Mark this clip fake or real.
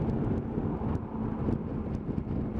real